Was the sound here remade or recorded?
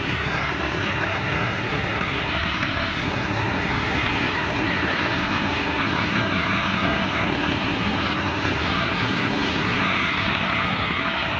remade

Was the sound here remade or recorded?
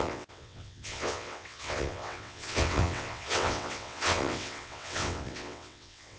remade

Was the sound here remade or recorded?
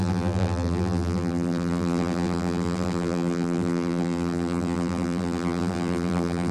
remade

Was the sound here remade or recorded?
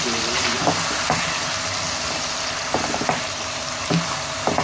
remade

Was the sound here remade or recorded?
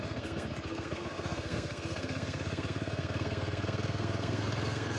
remade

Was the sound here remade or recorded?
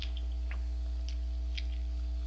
recorded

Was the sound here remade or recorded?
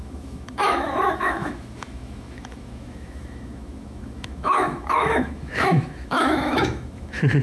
remade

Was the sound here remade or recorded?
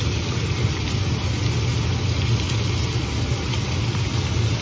recorded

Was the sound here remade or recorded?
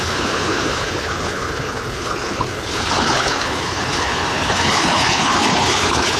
remade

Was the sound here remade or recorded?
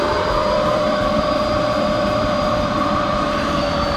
remade